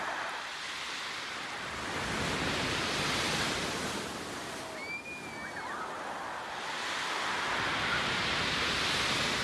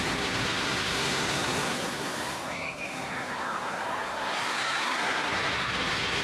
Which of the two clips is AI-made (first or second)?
second